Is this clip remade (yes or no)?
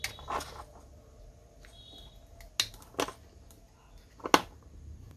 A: no